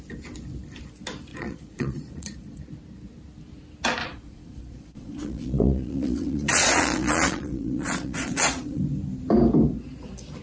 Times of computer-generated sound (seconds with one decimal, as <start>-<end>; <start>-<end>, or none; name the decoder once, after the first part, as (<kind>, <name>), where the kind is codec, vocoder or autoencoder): 1.3-2.6 (vocoder, Vocos); 4.0-8.8